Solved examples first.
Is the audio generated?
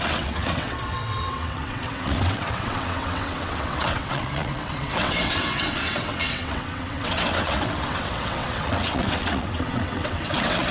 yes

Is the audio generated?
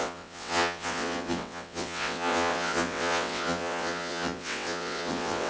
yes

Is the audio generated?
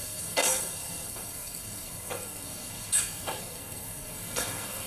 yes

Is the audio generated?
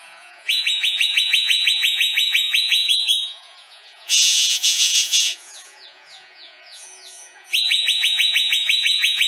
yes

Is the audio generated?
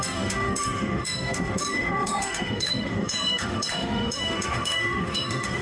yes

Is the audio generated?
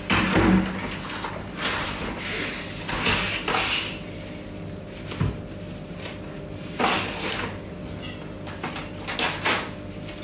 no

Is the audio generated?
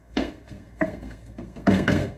yes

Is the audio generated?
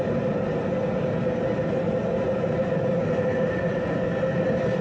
no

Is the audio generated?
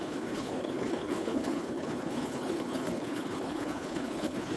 yes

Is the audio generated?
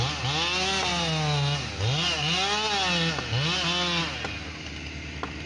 no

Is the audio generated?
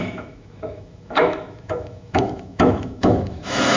yes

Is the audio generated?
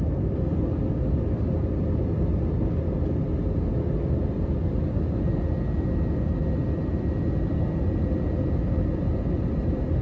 no